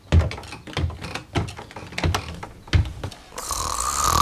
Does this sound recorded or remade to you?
recorded